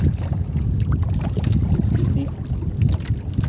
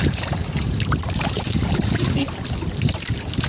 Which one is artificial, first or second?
second